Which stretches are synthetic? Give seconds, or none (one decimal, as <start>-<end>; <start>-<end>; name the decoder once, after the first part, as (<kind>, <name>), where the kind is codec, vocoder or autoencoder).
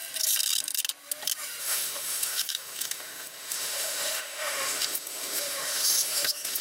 1.6-6.6 (autoencoder, DAC-VAE)